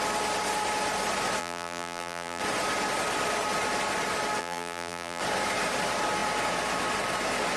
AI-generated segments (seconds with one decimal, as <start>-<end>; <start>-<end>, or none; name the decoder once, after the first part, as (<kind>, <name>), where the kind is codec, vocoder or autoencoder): 1.4-2.4 (vocoder, BigVGAN v2); 4.4-5.2